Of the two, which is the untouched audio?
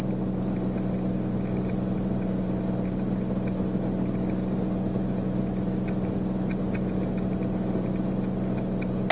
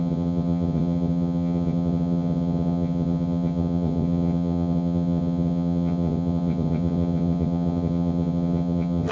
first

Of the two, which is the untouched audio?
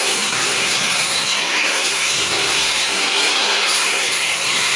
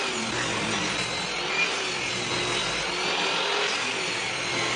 second